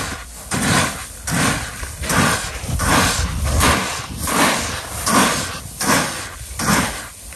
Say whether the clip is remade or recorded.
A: recorded